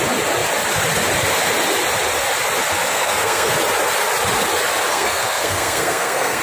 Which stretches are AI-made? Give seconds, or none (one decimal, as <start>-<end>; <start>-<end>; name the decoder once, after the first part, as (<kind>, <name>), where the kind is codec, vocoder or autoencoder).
2.9-3.5 (codec, SNAC); 4.9-6.4